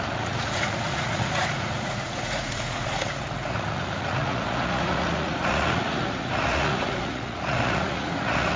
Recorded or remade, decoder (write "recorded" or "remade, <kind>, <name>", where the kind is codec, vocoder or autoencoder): remade, vocoder, Vocos